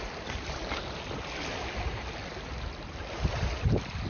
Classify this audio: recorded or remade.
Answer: recorded